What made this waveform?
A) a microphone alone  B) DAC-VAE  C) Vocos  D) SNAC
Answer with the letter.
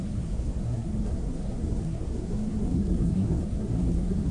D